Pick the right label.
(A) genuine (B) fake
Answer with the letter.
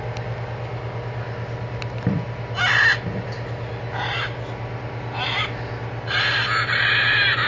A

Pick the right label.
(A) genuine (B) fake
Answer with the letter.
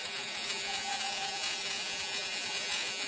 B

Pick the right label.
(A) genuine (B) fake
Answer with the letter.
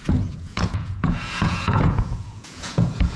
B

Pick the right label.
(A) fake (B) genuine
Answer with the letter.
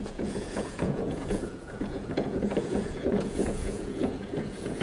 A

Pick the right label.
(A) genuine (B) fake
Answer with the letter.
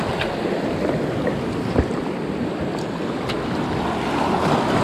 A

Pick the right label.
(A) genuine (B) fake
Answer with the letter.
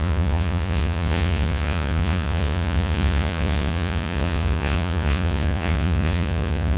B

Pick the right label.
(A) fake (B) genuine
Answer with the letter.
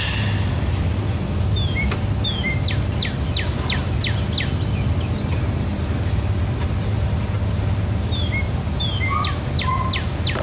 B